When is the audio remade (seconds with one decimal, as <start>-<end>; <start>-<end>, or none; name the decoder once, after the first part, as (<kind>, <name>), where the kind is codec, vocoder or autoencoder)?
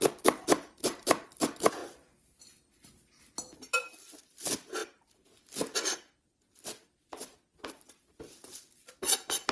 none